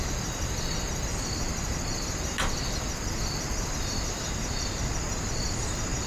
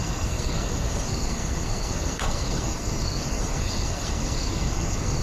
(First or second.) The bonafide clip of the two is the first